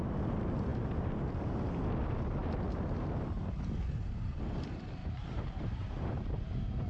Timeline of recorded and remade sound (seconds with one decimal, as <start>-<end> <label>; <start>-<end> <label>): 0.0-5.0 recorded; 5.0-6.5 remade; 6.5-6.9 recorded